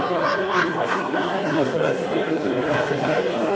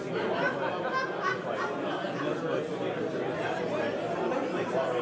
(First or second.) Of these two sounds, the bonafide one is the second